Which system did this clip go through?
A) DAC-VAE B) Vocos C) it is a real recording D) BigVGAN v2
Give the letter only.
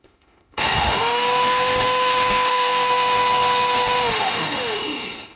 A